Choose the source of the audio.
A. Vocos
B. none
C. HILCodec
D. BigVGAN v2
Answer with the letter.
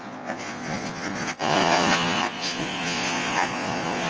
A